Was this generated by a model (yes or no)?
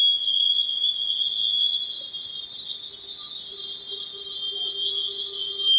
no